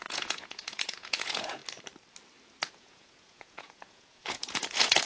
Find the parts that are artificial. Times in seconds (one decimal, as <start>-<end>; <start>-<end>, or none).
0.0-1.6; 2.7-5.1